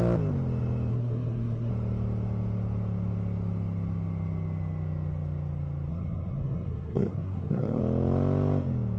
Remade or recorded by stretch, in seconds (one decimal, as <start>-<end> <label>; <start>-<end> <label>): 0.0-0.9 recorded; 0.9-1.7 remade; 1.7-5.9 recorded; 5.9-7.8 remade; 7.8-9.0 recorded